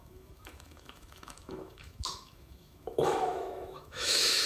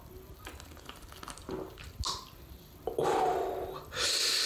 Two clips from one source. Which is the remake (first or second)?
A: first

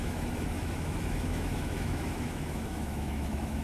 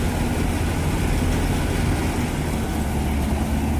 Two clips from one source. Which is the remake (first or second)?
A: first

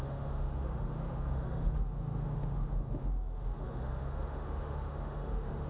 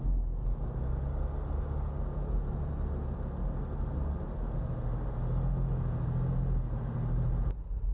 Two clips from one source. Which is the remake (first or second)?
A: first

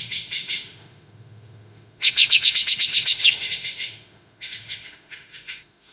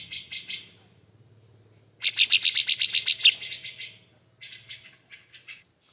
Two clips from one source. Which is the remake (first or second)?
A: first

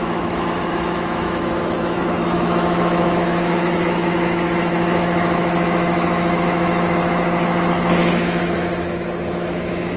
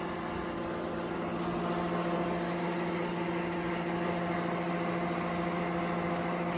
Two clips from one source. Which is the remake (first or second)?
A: first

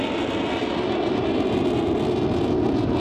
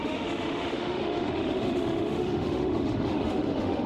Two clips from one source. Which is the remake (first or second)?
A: second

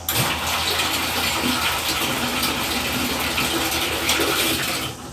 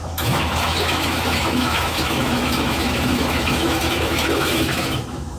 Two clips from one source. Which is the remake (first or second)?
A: second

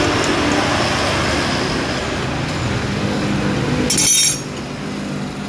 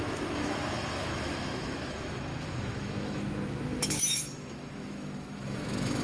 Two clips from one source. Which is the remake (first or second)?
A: second